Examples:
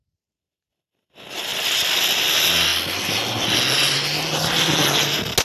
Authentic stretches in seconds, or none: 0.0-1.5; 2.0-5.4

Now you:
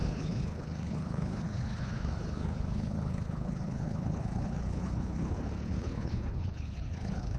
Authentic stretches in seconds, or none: none

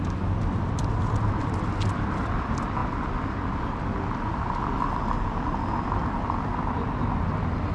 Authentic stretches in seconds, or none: 0.0-7.7

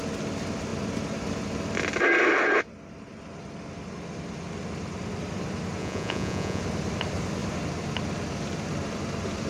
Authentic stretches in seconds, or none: 0.0-5.8; 6.6-9.5

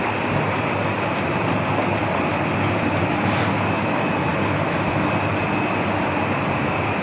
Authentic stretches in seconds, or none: 0.0-7.0

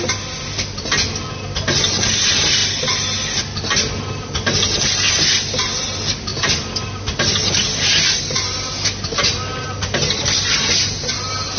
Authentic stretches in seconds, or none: 0.0-11.6